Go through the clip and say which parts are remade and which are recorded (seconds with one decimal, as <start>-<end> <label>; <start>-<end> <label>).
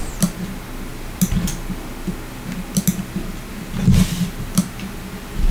0.0-5.5 recorded